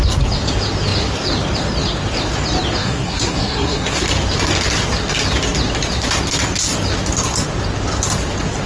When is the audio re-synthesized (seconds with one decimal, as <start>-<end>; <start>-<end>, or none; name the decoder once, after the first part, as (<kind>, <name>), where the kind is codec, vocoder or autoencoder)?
2.8-4.0 (codec, SNAC)